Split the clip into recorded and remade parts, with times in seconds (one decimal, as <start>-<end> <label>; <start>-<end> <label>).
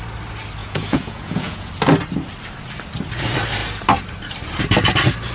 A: 0.0-0.6 recorded; 0.6-1.7 remade; 1.7-5.3 recorded